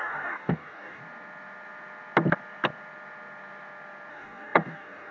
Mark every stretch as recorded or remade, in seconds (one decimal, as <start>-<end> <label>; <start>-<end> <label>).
0.0-1.0 remade; 1.0-4.1 recorded; 4.1-5.1 remade